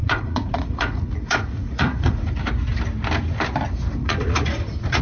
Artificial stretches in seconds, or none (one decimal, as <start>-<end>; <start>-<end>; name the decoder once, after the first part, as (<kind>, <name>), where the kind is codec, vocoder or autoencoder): 0.0-2.4 (vocoder, Vocos); 4.0-5.0